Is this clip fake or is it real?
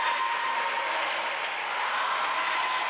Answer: real